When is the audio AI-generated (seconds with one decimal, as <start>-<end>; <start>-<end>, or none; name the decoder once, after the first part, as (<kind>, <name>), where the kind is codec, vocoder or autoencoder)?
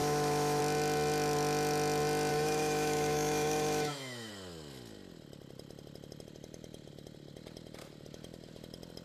0.0-0.6 (autoencoder, DAC-VAE); 2.3-4.3